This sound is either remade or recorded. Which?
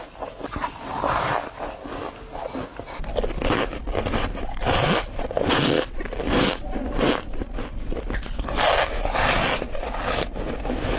recorded